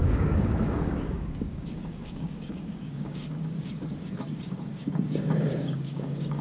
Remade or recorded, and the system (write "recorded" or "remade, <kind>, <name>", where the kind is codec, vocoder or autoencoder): remade, codec, DAC